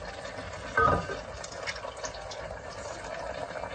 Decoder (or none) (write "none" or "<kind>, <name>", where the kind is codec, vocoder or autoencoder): none